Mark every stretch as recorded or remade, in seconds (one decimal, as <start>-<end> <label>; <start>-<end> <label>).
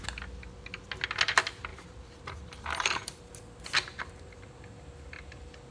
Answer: 0.0-1.7 recorded; 1.7-3.2 remade; 3.2-5.7 recorded